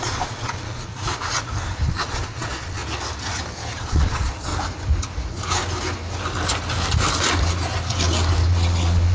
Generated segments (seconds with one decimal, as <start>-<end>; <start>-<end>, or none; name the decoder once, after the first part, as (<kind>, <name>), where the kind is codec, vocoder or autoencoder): 0.0-0.9 (vocoder, Vocos); 1.9-2.8; 3.8-4.5; 8.5-9.1